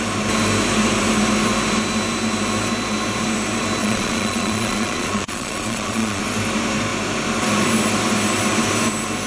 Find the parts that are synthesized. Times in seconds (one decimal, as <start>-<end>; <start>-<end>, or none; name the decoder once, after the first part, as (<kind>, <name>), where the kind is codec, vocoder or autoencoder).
3.8-6.2 (vocoder, Vocos)